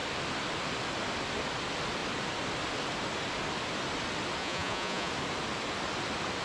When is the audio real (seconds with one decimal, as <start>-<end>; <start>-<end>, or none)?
0.0-4.4; 5.1-6.4